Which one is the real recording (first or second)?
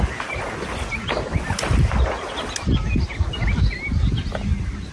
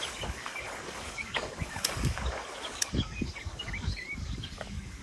first